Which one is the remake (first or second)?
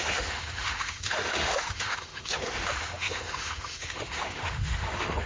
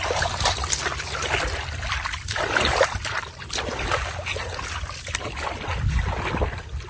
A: first